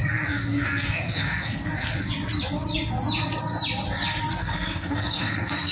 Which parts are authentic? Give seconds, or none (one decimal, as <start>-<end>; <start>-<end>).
2.1-4.4